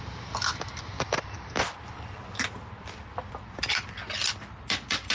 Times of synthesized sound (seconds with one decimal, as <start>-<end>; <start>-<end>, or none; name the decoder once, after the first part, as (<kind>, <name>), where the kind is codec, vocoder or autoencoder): none